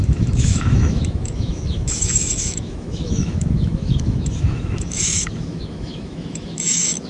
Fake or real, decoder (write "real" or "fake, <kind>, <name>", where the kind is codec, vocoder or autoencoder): fake, autoencoder, DAC-VAE